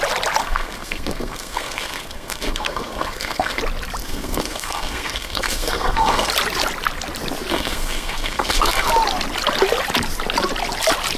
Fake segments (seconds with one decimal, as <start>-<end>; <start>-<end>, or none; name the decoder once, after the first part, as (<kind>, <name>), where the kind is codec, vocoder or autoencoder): 0.4-3.6 (codec, SNAC); 4.0-6.3; 7.5-8.9